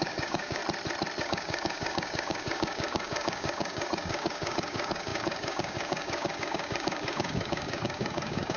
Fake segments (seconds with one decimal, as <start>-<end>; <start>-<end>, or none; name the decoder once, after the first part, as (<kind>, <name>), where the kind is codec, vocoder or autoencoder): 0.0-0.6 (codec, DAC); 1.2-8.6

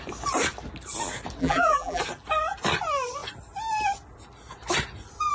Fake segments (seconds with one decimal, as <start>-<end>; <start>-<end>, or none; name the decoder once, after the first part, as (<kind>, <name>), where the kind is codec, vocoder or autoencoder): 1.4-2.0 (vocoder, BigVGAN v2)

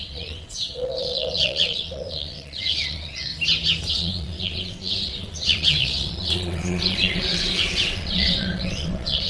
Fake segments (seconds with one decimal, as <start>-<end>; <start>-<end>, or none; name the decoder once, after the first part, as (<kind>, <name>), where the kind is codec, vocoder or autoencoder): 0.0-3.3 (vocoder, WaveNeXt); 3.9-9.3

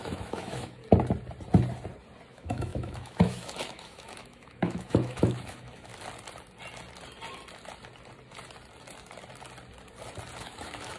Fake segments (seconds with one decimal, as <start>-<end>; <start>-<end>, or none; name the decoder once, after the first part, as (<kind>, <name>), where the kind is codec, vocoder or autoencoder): 0.0-0.8 (autoencoder, DAC-VAE); 2.3-5.9; 10.4-11.0

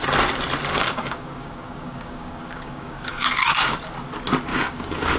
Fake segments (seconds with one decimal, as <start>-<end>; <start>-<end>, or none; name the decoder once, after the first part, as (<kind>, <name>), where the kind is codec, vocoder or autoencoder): 0.7-3.8 (codec, DAC); 4.5-5.2